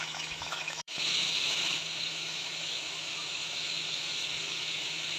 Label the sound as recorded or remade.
remade